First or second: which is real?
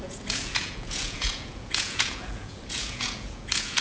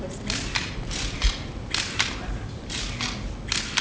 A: second